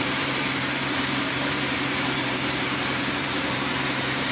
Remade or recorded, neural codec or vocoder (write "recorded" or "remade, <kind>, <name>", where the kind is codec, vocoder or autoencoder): remade, vocoder, BigVGAN v2